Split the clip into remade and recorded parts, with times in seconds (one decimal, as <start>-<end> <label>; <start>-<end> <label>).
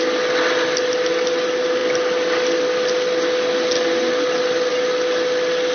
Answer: 0.0-5.7 recorded